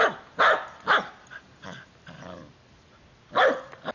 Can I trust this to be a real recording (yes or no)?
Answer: yes